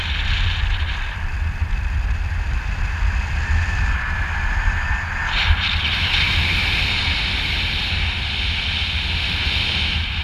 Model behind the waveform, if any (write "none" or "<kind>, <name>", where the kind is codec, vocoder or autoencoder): none